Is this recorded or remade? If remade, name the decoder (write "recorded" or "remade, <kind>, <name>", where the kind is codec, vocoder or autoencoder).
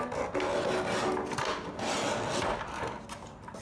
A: recorded